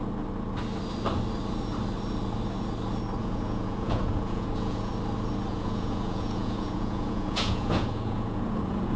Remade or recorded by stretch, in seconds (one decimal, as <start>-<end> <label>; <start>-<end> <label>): 0.0-3.2 recorded; 3.2-4.9 remade; 4.9-5.5 recorded; 5.5-9.0 remade